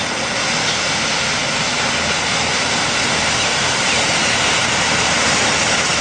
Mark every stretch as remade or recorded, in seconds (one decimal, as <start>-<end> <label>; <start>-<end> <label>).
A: 0.0-6.0 recorded